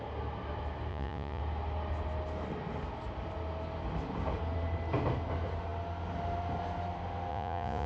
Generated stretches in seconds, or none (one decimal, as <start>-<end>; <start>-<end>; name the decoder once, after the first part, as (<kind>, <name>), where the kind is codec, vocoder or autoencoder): 0.9-1.4 (vocoder, Vocos); 7.3-7.9